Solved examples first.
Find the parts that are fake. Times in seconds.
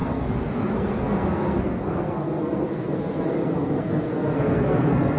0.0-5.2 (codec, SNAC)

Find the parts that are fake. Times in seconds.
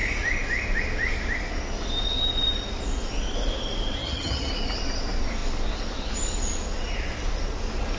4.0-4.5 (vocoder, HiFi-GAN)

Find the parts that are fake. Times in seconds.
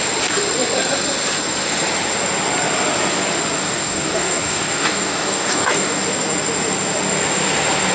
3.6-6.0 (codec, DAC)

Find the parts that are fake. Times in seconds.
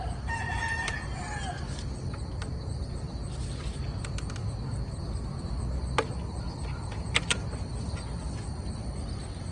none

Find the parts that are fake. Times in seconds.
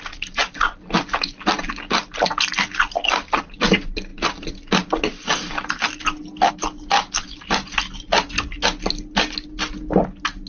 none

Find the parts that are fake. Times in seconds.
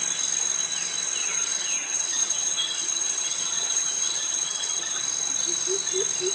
1.2-5.0 (vocoder, HiFi-GAN)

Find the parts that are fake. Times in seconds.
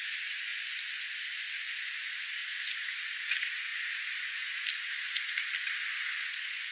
none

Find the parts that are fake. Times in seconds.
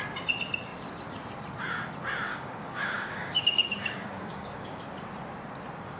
2.3-4.8 (codec, DAC)